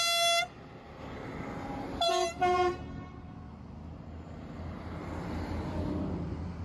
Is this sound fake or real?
real